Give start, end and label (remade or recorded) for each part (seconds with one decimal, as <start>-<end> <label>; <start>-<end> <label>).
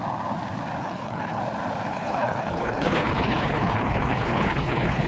0.0-0.8 recorded; 0.8-1.4 remade; 1.4-1.9 recorded; 1.9-5.1 remade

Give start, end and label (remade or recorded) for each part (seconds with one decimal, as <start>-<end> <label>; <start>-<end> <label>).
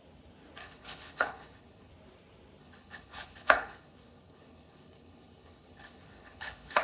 0.0-0.6 recorded; 0.6-1.9 remade; 1.9-2.6 recorded; 2.6-6.8 remade